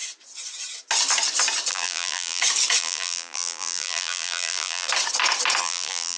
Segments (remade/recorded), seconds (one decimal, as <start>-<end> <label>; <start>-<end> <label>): 0.0-1.7 recorded; 1.7-2.4 remade; 2.4-2.8 recorded; 2.8-4.9 remade; 4.9-5.6 recorded; 5.6-6.2 remade